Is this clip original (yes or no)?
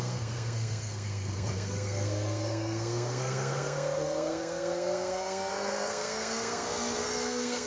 no